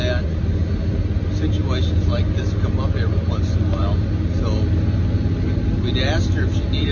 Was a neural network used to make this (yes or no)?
no